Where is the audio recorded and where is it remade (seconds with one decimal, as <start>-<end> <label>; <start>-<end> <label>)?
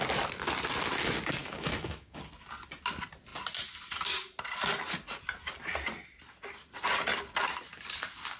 0.0-1.4 recorded; 1.4-2.2 remade; 2.2-8.4 recorded